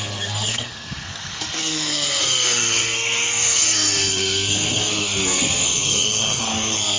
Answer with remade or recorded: remade